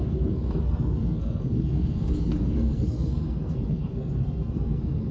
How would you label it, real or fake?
fake